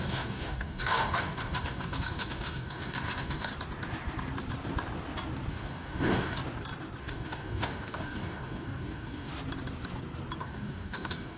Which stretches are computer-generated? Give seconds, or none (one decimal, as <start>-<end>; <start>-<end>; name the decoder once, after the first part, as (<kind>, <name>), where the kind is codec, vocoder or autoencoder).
0.0-3.5 (codec, DAC); 5.5-6.4; 7.0-9.3; 10.4-11.4